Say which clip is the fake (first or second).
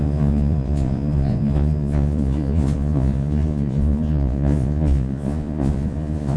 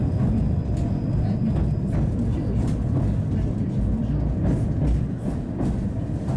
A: first